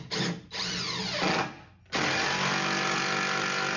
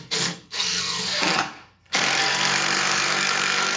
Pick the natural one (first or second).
first